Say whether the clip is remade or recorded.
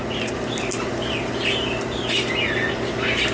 recorded